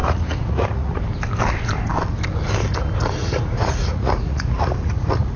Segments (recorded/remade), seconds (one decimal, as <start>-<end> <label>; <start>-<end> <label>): 0.0-1.0 remade; 1.0-3.2 recorded; 3.2-5.4 remade